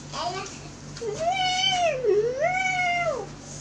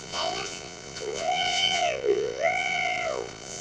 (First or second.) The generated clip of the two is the second